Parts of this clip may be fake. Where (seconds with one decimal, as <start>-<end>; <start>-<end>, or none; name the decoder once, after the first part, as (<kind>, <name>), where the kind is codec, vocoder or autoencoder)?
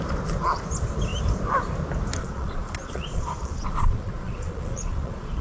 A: 2.2-5.4 (vocoder, Vocos)